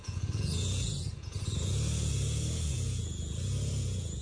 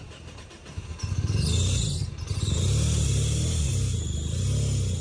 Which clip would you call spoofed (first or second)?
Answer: first